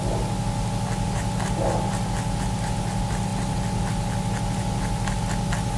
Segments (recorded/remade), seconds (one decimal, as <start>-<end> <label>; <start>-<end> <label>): 0.0-5.8 recorded